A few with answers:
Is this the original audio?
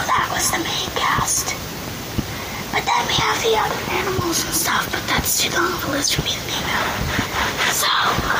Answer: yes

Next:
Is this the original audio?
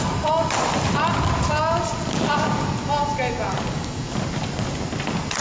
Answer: yes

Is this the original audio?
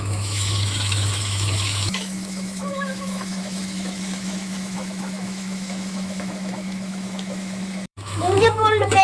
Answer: no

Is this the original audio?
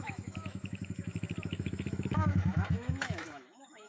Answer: no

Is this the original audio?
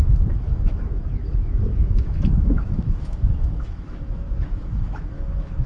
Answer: no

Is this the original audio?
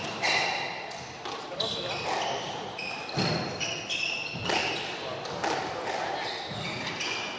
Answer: yes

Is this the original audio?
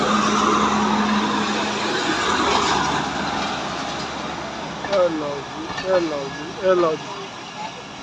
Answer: yes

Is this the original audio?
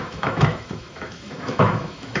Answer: no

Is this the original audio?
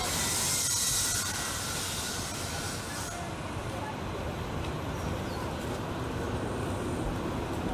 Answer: yes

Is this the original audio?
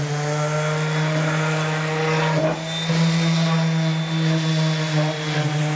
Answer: yes